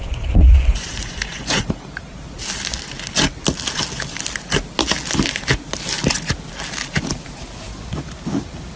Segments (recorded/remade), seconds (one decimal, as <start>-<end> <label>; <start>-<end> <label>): 0.0-1.6 remade; 1.6-8.8 recorded